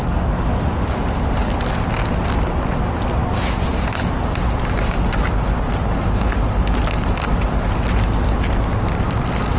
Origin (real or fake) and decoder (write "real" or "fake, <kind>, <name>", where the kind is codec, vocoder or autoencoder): real